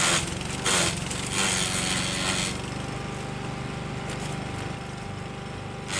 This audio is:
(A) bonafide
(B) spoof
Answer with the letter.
A